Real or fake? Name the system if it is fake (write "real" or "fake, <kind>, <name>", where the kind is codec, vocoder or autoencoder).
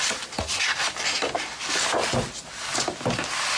real